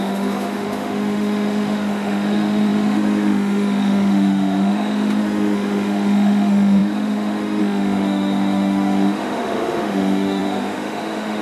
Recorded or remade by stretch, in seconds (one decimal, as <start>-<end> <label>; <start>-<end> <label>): 0.0-11.4 remade